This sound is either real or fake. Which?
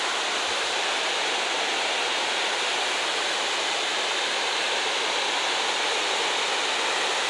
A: real